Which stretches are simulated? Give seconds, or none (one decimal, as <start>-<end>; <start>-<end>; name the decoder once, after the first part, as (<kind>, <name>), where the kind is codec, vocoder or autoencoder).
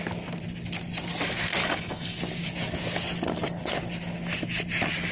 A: 1.6-2.2 (codec, HILCodec)